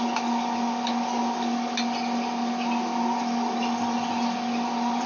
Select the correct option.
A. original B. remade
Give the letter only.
A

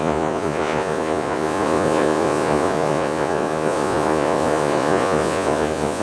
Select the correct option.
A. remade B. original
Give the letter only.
A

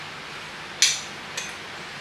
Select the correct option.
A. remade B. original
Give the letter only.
B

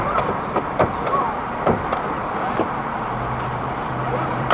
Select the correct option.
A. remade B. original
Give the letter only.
A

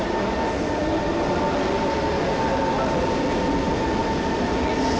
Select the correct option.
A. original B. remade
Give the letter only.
A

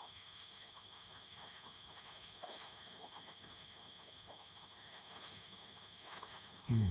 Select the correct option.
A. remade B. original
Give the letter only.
A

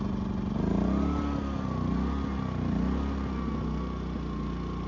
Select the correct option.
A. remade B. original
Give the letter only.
B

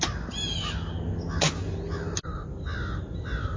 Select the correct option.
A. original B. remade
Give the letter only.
A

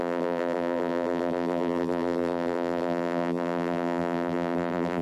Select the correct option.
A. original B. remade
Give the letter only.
B